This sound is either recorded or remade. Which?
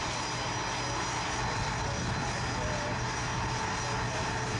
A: recorded